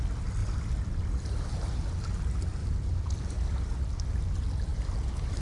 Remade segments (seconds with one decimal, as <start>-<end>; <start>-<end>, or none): 0.4-1.5; 2.6-3.8; 4.7-5.4